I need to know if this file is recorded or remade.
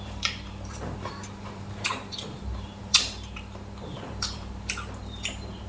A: remade